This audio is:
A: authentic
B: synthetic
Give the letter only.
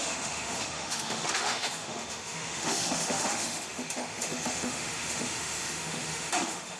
B